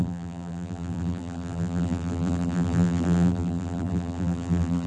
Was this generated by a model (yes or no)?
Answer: yes